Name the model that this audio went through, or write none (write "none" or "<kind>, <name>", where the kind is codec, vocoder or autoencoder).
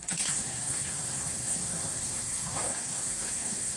codec, SNAC